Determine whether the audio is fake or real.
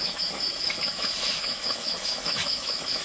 fake